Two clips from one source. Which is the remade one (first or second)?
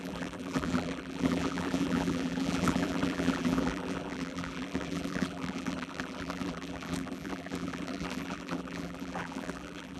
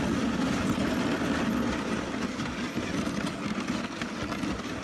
first